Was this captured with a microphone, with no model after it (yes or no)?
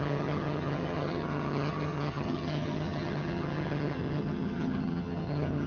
no